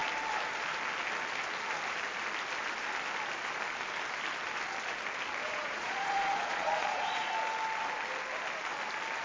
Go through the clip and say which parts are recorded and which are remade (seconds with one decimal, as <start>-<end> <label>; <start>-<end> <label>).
0.0-5.4 recorded; 5.4-7.3 remade; 7.3-9.2 recorded